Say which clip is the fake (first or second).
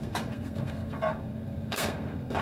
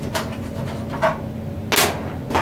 first